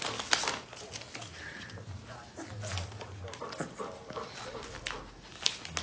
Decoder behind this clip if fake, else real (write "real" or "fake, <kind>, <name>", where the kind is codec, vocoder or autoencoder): real